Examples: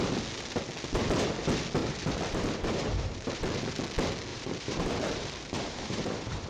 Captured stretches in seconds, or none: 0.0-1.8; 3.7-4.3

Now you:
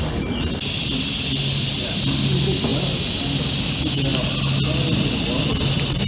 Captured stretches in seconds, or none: 0.0-6.1

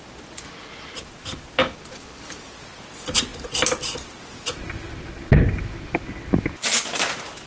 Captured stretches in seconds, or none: 0.0-7.5

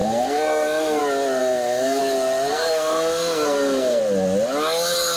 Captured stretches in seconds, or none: 1.0-1.4; 2.0-2.5; 4.0-5.2